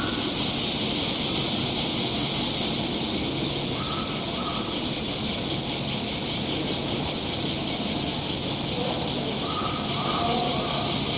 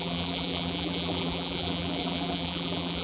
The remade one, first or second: second